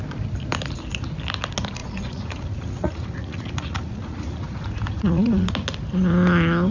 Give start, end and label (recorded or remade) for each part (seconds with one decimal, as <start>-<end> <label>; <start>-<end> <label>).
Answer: 0.0-1.8 recorded; 1.8-5.5 remade; 5.5-6.7 recorded